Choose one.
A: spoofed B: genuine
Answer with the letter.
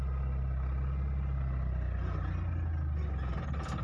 B